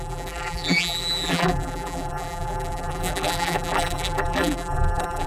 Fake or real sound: fake